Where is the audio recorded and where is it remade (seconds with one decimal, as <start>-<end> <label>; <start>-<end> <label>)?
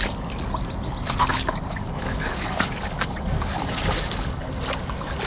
0.0-1.3 recorded; 1.3-4.5 remade; 4.5-5.3 recorded